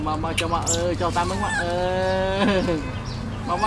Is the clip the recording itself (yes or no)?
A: yes